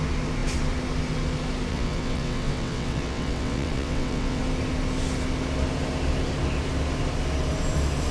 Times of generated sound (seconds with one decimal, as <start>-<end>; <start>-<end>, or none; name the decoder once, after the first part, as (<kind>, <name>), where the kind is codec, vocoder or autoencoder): 1.7-4.4 (vocoder, WaveNeXt)